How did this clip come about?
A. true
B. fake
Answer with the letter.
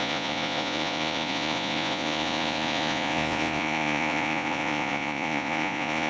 B